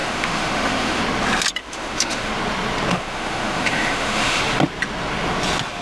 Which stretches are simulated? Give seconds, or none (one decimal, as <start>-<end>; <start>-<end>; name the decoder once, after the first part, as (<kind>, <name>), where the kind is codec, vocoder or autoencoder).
0.0-1.0 (autoencoder, DAC-VAE); 1.6-2.3; 2.9-4.4